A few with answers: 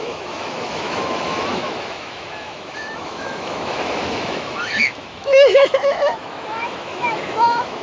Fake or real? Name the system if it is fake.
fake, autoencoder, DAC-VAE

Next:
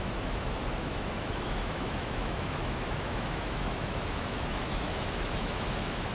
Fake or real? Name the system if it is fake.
fake, autoencoder, DAC-VAE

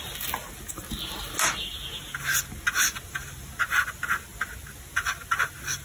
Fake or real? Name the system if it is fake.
real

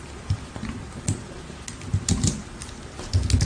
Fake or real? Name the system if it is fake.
real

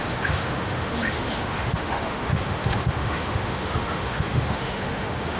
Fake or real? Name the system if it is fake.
fake, autoencoder, DAC-VAE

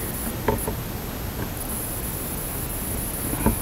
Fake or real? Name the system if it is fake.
real